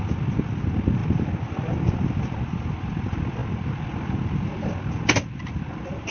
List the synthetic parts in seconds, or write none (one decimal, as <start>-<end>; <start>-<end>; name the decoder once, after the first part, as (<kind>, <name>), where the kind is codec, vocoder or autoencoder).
none